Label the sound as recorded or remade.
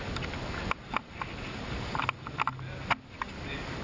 recorded